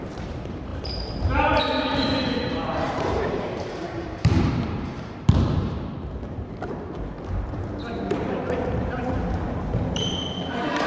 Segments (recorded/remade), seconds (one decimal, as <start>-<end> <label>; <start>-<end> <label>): 0.0-10.9 remade